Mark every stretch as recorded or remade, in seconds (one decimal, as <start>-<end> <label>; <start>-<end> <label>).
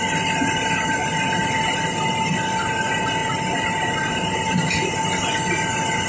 0.0-6.1 recorded